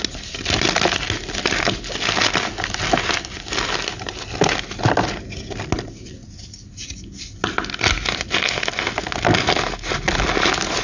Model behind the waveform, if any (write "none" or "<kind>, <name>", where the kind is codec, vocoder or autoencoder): none